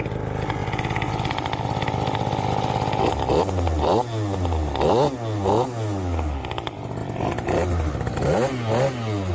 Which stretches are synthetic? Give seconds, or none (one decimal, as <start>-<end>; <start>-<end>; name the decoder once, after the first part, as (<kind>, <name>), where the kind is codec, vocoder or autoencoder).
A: none